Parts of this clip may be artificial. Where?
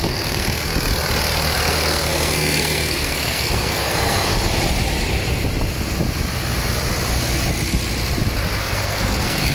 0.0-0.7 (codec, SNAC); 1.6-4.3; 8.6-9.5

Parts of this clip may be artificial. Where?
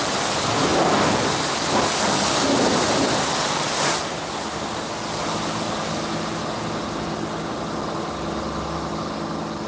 none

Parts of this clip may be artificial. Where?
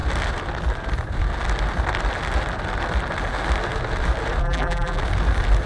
4.4-5.0 (vocoder, BigVGAN v2)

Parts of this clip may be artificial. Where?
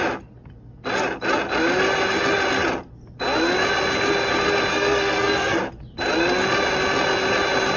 4.7-5.6 (codec, SNAC)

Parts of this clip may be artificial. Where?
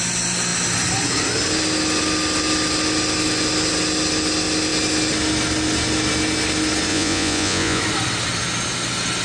6.9-7.8 (vocoder, Vocos)